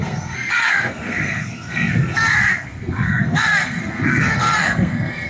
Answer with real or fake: fake